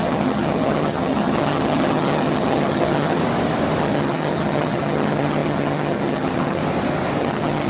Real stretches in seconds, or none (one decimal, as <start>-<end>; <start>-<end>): 3.2-3.8; 6.6-7.2